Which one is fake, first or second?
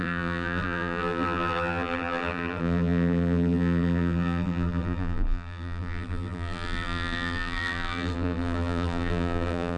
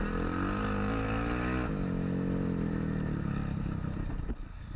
first